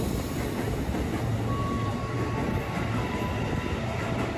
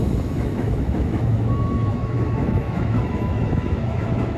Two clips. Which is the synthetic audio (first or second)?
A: second